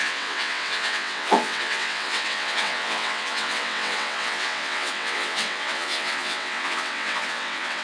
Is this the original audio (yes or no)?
no